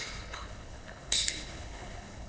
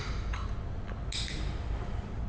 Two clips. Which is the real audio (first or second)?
second